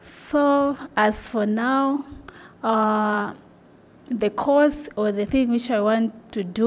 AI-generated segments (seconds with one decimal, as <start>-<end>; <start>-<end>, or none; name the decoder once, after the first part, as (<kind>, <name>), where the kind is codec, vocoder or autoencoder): 2.0-3.9 (vocoder, BigVGAN v2)